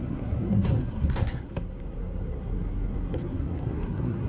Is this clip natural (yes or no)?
no